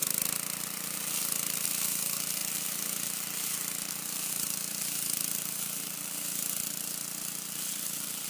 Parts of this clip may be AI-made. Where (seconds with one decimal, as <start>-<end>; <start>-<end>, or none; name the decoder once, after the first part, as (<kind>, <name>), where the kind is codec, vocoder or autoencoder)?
none